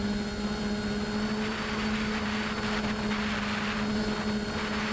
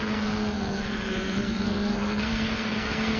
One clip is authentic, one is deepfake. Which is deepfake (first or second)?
second